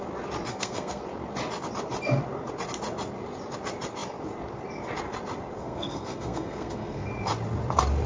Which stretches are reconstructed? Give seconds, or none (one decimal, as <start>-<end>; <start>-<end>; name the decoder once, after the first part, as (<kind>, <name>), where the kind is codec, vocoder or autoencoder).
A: 0.5-1.0 (codec, SNAC); 5.6-7.1